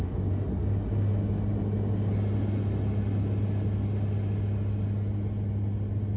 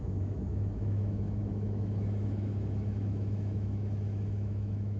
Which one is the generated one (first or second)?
second